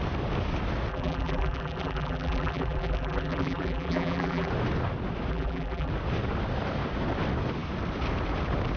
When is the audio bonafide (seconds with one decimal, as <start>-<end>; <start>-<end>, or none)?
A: 0.0-0.9; 4.5-5.3; 5.9-8.8